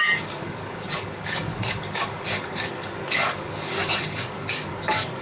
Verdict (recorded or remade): remade